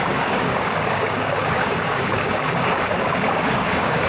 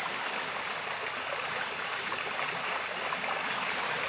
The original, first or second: second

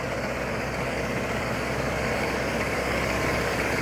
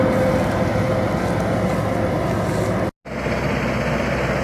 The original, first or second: second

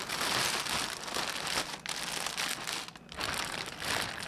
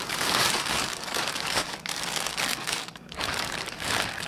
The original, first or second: first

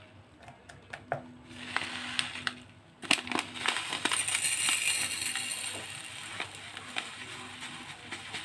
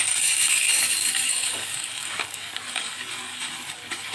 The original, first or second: first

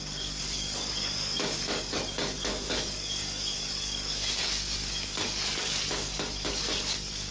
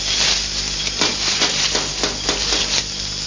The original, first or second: second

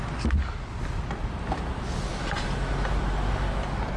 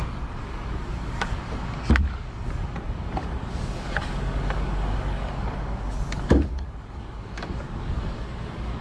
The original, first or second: first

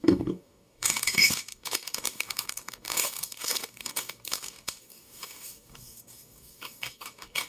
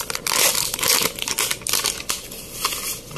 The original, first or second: second